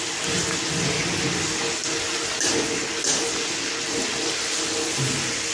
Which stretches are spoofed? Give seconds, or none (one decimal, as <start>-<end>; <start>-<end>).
none